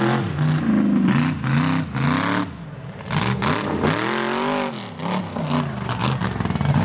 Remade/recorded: recorded